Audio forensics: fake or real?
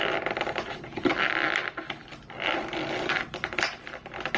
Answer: real